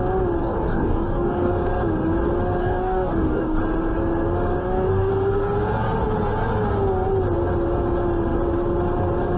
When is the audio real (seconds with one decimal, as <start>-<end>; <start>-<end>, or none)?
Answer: 0.0-0.4; 1.5-2.6; 3.6-4.6; 5.1-9.4